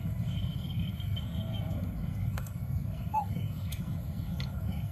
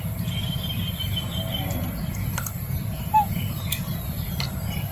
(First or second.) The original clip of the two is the second